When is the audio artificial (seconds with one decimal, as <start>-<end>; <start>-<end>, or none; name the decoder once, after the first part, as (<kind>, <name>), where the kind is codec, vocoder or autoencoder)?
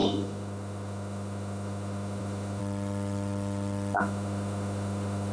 0.0-2.6 (autoencoder, DAC-VAE); 4.0-5.3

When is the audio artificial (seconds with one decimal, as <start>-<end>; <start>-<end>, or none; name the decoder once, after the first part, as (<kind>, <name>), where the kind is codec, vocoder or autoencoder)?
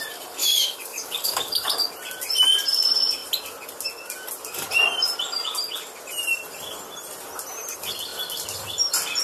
0.4-1.9 (codec, DAC)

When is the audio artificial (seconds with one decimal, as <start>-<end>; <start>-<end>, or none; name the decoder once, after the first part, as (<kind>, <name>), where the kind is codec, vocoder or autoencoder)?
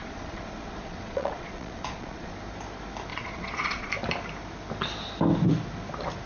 0.0-2.3 (vocoder, Vocos); 3.1-3.9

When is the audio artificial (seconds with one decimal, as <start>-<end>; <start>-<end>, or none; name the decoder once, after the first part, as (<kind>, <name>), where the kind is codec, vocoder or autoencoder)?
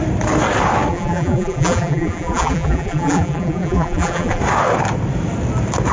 0.9-4.4 (vocoder, BigVGAN v2)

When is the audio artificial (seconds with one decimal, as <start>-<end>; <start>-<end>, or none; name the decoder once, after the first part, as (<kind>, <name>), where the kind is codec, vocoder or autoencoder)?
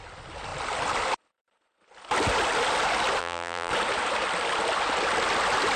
3.2-3.7 (vocoder, BigVGAN v2)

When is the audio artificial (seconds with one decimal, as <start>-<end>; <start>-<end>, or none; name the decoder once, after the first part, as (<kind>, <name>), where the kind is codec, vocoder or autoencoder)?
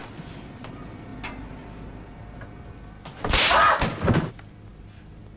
none